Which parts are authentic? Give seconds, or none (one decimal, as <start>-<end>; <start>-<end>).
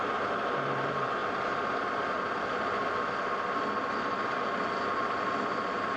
0.0-6.0